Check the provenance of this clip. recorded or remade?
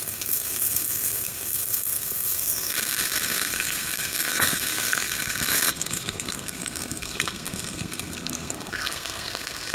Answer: remade